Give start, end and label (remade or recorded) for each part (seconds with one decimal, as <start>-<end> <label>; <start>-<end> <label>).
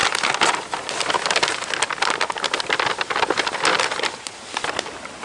0.0-5.2 recorded